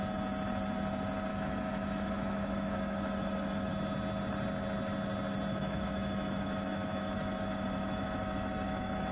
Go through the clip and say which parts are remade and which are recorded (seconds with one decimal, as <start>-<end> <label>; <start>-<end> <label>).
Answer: 0.0-1.3 recorded; 1.3-3.7 remade; 3.7-5.5 recorded; 5.5-9.1 remade

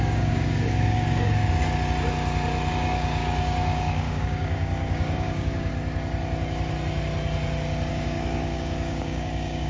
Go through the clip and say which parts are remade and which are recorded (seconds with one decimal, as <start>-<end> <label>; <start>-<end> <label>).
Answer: 0.0-1.4 remade; 1.4-2.7 recorded; 2.7-5.7 remade; 5.7-7.9 recorded; 7.9-9.7 remade

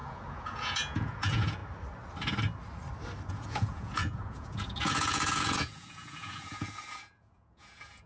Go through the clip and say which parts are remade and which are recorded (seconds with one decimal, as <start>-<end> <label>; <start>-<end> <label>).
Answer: 0.0-1.6 remade; 1.6-3.3 recorded; 3.3-8.1 remade

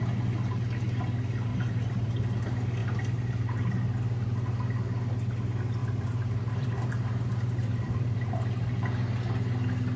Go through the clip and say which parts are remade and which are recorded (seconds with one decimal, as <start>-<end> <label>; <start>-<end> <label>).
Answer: 0.0-1.5 recorded; 1.5-2.1 remade; 2.1-2.8 recorded; 2.8-3.7 remade; 3.7-5.8 recorded; 5.8-8.3 remade; 8.3-10.0 recorded

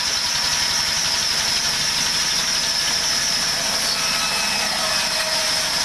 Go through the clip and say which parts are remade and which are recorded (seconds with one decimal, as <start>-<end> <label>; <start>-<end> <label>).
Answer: 0.0-5.8 recorded

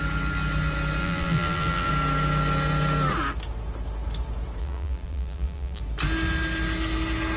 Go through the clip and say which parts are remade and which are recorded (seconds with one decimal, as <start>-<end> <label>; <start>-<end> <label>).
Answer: 0.0-1.0 recorded; 1.0-1.9 remade; 1.9-4.6 recorded; 4.6-5.8 remade; 5.8-7.4 recorded

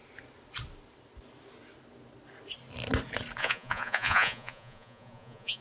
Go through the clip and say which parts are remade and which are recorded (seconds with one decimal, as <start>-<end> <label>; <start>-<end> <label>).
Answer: 0.0-3.4 recorded; 3.4-5.6 remade